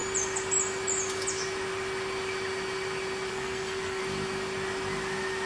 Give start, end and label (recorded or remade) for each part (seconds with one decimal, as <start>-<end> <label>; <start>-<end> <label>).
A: 0.0-3.3 recorded; 3.3-4.0 remade; 4.0-5.5 recorded